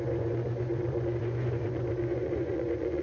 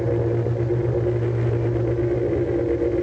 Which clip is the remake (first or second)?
first